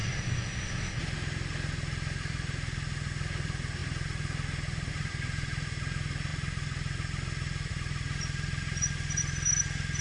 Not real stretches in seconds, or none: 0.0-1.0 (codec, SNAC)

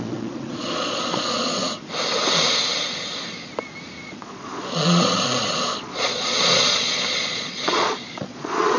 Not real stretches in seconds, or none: 0.0-1.8 (vocoder, Vocos); 4.0-8.8

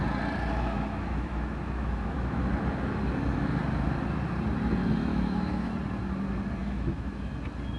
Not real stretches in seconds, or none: 0.5-2.4 (autoencoder, DAC-VAE); 5.1-5.7; 6.6-7.3

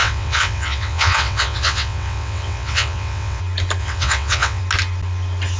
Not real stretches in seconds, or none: 0.0-3.4 (vocoder, WaveNeXt); 3.8-4.6